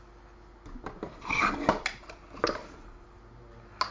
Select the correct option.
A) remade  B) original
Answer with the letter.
B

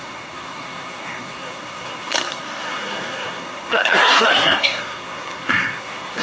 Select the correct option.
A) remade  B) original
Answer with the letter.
A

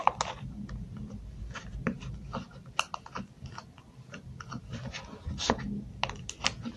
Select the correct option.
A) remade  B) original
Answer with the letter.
B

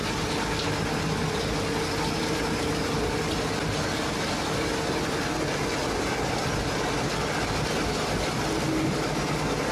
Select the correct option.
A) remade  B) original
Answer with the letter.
B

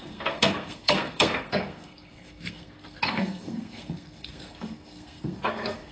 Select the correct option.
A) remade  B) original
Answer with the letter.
A